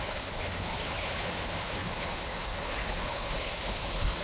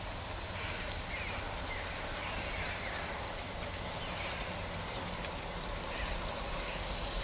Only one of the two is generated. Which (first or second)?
first